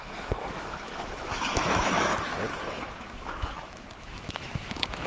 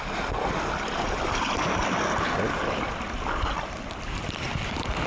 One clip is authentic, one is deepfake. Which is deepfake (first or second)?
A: first